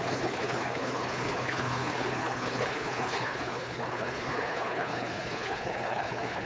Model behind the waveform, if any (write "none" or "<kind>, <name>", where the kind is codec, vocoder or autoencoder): codec, HILCodec